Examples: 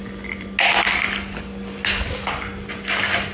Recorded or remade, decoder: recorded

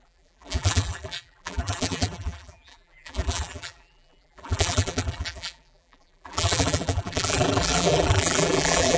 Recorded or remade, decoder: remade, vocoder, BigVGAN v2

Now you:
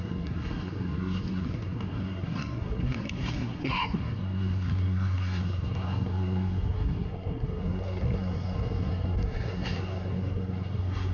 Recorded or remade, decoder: remade, codec, SNAC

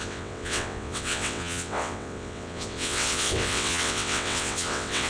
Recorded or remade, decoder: remade, vocoder, WaveNeXt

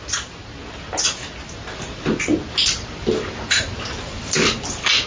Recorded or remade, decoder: recorded